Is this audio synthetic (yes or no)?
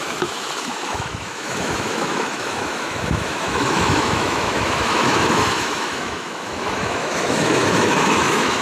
yes